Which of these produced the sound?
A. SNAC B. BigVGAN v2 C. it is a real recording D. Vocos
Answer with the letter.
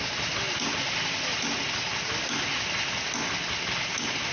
C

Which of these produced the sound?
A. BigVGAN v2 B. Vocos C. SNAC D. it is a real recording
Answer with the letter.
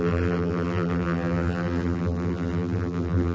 A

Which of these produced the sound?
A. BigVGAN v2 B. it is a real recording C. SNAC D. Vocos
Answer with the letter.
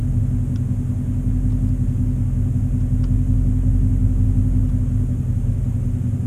B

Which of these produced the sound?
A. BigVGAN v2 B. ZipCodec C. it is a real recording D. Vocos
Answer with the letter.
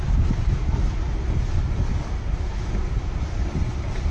C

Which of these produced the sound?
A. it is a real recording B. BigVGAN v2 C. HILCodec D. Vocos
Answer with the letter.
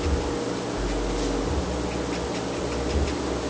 A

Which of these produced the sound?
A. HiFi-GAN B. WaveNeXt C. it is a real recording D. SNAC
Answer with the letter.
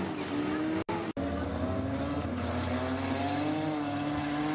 C